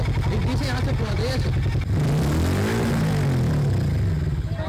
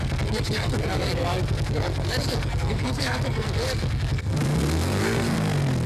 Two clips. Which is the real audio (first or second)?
first